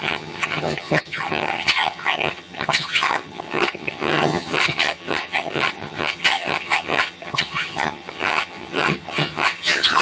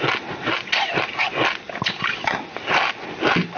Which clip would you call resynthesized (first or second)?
first